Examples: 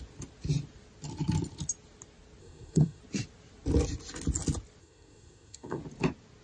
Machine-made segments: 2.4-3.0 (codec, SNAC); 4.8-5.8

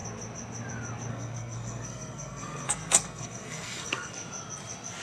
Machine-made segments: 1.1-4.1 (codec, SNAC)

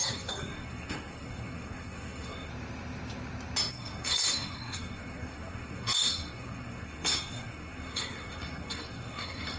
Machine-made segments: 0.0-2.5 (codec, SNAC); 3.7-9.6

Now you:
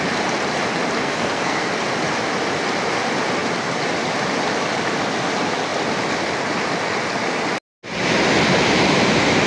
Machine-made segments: 1.0-1.7 (codec, SNAC)